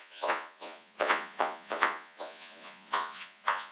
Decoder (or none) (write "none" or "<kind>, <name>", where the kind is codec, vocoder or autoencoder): vocoder, Vocos